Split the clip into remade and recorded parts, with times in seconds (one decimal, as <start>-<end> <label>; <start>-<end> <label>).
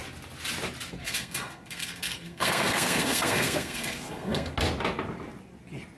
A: 0.0-1.0 recorded; 1.0-4.5 remade; 4.5-6.0 recorded